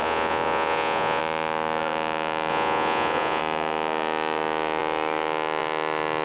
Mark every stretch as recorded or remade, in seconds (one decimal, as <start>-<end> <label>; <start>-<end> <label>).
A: 0.0-1.2 remade; 1.2-2.5 recorded; 2.5-3.4 remade; 3.4-6.2 recorded